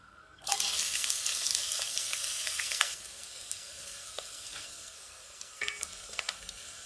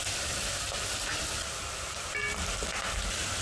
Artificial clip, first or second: first